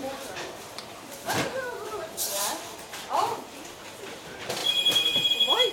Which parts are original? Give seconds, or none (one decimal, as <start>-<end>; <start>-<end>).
none